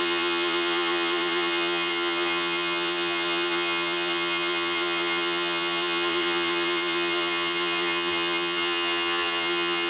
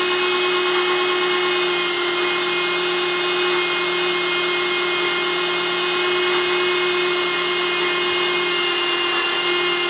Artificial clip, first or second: first